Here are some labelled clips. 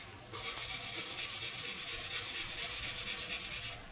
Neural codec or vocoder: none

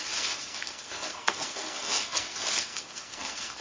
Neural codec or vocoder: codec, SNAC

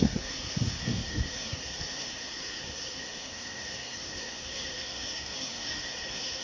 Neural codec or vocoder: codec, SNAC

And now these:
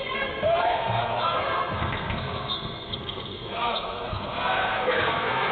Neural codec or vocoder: codec, SNAC